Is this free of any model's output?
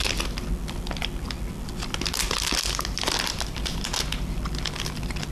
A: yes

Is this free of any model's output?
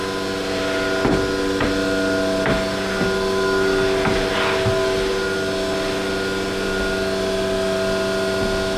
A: yes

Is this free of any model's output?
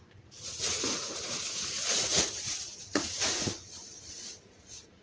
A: no